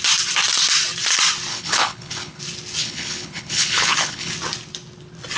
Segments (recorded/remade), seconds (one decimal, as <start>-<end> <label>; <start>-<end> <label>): 0.0-1.5 recorded; 1.5-2.4 remade; 2.4-2.8 recorded; 2.8-4.3 remade; 4.3-5.4 recorded